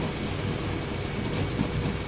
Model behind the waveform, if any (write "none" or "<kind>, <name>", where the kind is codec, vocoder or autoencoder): none